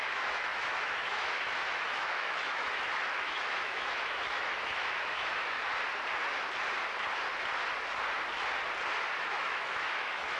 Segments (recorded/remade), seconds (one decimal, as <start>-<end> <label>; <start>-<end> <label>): 0.0-5.6 remade; 5.6-9.2 recorded; 9.2-10.4 remade

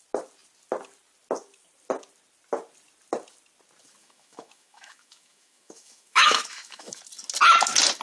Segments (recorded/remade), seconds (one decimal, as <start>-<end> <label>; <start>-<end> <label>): 0.0-4.0 recorded; 4.0-7.0 remade; 7.0-8.0 recorded

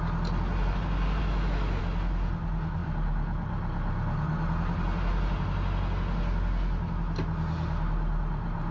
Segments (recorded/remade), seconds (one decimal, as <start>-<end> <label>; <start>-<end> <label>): 0.0-1.2 recorded; 1.2-1.8 remade; 1.8-8.7 recorded

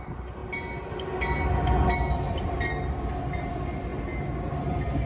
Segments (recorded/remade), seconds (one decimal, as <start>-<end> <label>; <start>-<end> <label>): 0.0-5.1 recorded

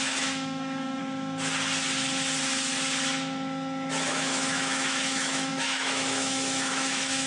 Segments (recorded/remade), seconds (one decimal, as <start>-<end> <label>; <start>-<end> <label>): 0.0-1.0 remade; 1.0-4.1 recorded; 4.1-7.3 remade

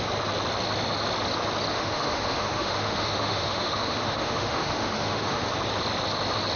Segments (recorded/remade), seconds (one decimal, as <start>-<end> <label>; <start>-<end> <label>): 0.0-1.7 recorded; 1.7-5.5 remade; 5.5-6.6 recorded